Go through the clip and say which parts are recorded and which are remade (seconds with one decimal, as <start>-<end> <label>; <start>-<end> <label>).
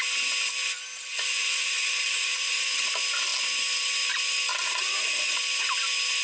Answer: 0.0-1.1 recorded; 1.1-2.9 remade; 2.9-4.5 recorded; 4.5-5.4 remade; 5.4-6.2 recorded